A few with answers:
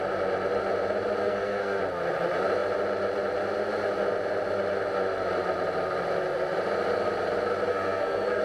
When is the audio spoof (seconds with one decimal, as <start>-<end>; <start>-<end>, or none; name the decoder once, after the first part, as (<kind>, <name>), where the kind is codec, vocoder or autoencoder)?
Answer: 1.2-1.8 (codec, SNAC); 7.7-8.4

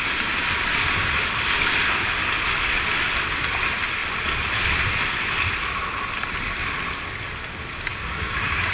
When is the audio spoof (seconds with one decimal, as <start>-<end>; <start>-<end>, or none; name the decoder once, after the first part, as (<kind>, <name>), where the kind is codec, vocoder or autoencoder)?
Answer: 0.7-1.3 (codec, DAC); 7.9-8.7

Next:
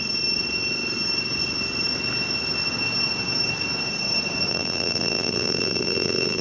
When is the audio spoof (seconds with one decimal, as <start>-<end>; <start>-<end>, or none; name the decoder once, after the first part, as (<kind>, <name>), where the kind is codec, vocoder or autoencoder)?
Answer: 4.5-6.4 (vocoder, BigVGAN v2)